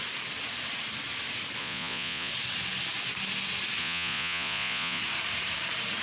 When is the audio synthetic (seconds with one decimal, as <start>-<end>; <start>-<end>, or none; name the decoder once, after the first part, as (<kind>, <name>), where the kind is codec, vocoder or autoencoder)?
1.6-2.3 (vocoder, Vocos); 3.8-5.0